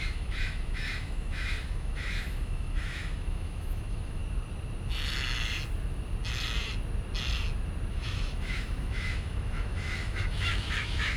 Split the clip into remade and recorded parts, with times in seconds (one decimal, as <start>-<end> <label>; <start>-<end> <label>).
0.0-4.2 remade; 4.2-7.9 recorded; 7.9-11.2 remade